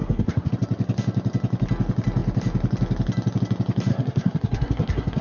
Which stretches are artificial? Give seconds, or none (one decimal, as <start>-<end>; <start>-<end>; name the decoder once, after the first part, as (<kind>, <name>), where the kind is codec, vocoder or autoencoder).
0.0-0.5 (codec, SNAC); 3.9-5.2